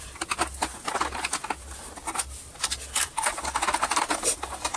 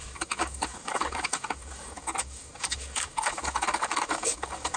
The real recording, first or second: first